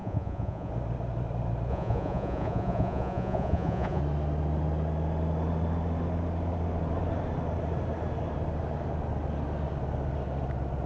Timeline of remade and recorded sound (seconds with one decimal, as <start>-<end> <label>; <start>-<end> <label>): 0.0-0.7 remade; 0.7-1.7 recorded; 1.7-4.0 remade; 4.0-10.9 recorded